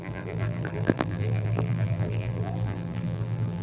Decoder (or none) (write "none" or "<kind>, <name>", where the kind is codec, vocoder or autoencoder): vocoder, BigVGAN v2